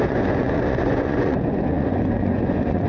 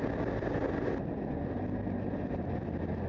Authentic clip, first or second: second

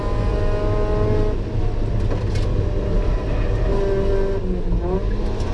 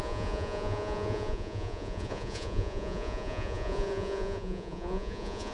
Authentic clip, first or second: first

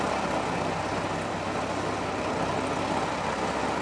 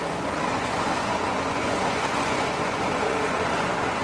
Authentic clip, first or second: first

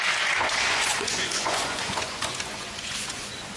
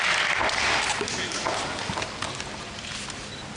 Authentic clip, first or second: second